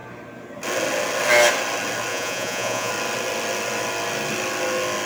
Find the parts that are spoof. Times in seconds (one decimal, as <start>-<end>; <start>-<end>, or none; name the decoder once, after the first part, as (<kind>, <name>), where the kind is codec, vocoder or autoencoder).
2.1-2.9 (vocoder, Vocos)